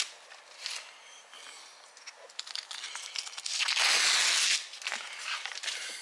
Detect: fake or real real